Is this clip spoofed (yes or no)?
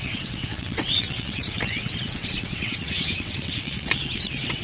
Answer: yes